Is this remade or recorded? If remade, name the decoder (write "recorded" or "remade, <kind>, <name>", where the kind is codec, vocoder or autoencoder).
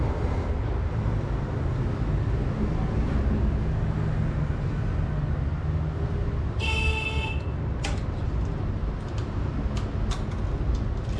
recorded